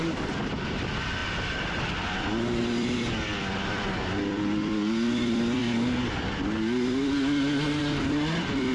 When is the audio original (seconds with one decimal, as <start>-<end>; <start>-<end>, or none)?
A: 1.2-2.6; 5.6-7.8